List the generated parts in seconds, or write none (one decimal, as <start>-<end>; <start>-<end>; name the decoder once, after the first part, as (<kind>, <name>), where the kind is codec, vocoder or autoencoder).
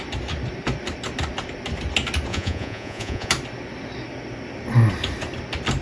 2.3-3.3 (vocoder, Vocos)